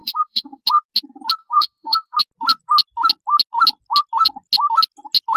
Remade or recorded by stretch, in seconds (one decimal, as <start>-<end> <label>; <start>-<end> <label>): 0.0-0.6 remade; 0.6-1.4 recorded; 1.4-2.2 remade; 2.2-5.4 recorded